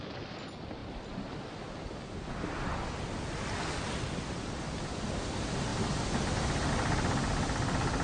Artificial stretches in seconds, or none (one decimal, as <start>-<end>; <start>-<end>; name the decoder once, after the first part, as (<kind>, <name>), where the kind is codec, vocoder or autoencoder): none